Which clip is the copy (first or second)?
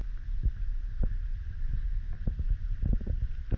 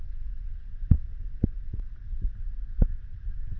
second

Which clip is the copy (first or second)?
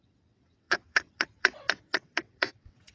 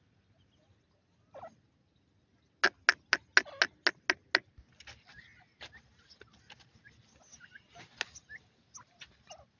first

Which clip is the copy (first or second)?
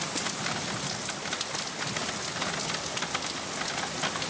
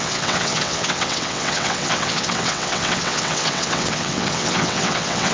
second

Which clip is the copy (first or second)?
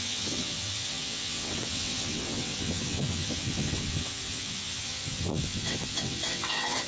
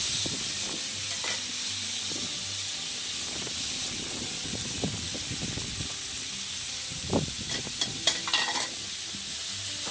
first